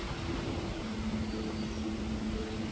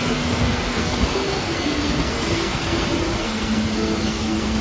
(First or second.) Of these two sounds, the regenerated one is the second